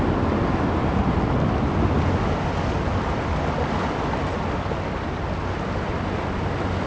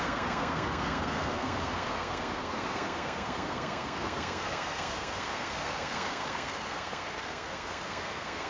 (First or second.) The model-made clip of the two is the second